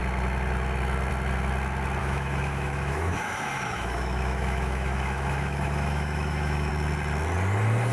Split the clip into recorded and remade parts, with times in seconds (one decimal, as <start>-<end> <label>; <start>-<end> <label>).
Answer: 0.0-2.0 recorded; 2.0-6.7 remade; 6.7-7.9 recorded